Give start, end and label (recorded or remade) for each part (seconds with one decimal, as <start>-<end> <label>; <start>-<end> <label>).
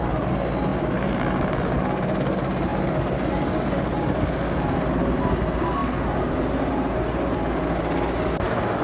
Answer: 0.0-8.8 recorded